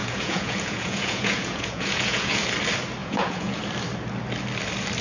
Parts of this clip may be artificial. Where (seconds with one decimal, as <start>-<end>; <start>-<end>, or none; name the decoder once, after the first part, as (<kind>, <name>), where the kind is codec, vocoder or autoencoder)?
0.0-2.4 (vocoder, Vocos); 3.0-3.6